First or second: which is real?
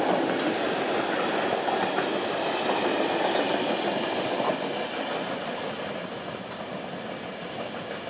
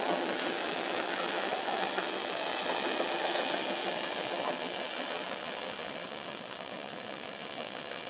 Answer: first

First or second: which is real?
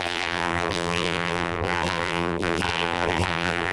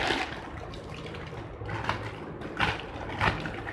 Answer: second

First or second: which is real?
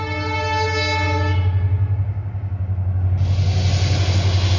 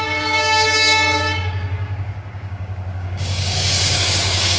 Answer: first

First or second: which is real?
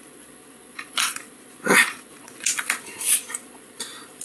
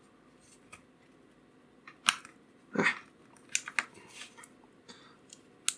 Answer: second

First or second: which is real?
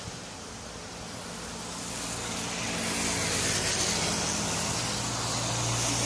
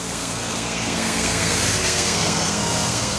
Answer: first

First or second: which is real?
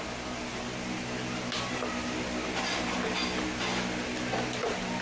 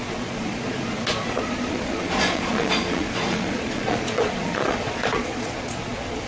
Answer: first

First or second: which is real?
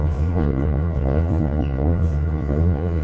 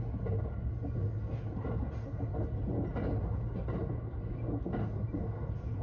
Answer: second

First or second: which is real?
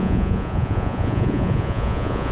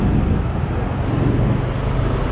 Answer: second